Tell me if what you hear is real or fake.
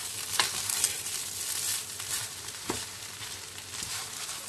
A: fake